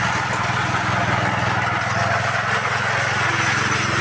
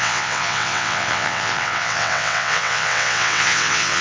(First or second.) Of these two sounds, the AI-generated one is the second